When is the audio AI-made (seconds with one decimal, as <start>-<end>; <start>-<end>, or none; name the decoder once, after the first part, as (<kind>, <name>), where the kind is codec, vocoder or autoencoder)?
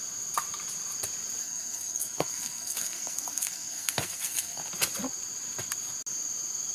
1.4-4.6 (codec, SNAC)